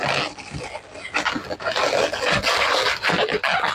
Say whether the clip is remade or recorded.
recorded